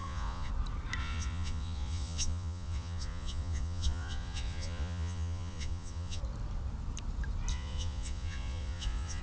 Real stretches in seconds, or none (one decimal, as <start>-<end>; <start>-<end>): 0.5-1.0; 6.2-7.5